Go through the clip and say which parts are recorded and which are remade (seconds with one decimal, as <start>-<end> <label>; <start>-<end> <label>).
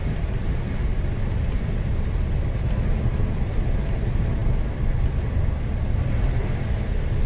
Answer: 0.0-7.3 recorded